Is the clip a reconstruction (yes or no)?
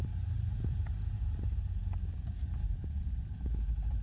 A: no